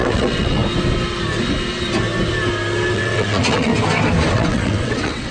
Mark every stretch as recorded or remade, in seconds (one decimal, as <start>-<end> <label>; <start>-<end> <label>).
0.0-0.6 remade; 0.6-2.9 recorded; 2.9-3.7 remade; 3.7-4.3 recorded; 4.3-5.3 remade